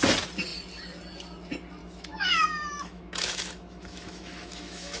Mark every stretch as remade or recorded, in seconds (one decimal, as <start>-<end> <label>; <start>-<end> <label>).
0.0-1.8 recorded; 1.8-5.0 remade